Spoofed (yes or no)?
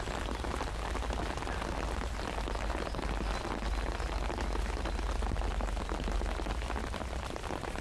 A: no